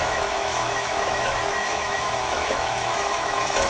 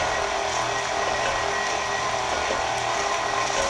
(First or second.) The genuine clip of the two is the second